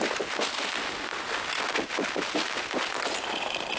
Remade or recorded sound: recorded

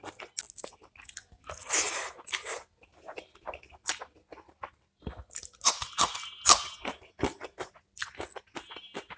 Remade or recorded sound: recorded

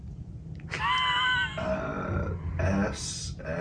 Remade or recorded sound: recorded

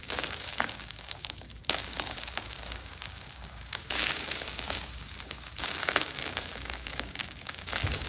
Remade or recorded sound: remade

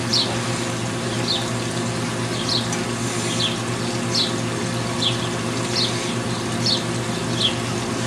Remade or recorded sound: recorded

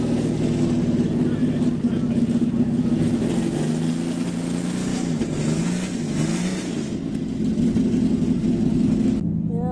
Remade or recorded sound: recorded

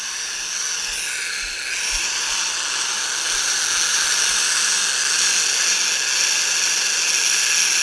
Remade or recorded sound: recorded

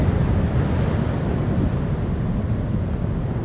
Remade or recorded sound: recorded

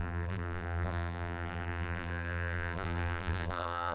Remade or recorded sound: remade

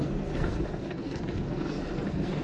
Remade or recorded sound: remade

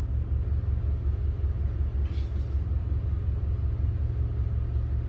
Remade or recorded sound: recorded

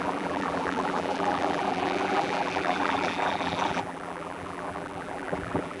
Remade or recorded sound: remade